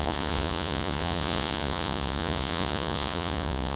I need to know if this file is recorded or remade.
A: remade